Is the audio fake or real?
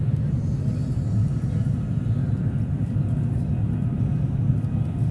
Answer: real